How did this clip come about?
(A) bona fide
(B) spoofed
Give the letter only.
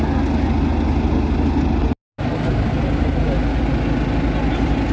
A